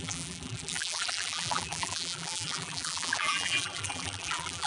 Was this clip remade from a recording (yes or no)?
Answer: yes